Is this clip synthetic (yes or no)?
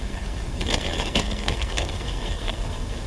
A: yes